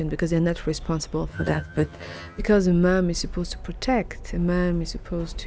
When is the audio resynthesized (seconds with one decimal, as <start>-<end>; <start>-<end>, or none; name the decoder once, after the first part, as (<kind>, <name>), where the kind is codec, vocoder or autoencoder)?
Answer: 1.3-2.4 (vocoder, HiFi-GAN)